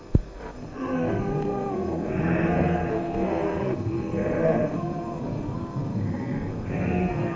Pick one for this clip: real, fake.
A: fake